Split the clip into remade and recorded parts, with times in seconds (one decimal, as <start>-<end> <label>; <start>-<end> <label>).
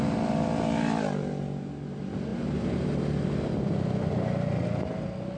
0.0-2.3 recorded; 2.3-3.0 remade; 3.0-5.4 recorded